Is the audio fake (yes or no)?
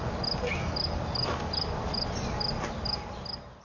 no